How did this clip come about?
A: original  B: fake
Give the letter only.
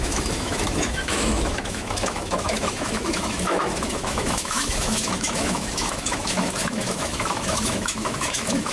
B